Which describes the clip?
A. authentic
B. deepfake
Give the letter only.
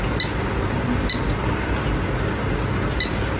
A